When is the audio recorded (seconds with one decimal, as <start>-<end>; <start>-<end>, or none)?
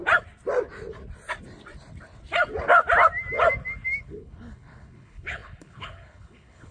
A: 0.0-4.0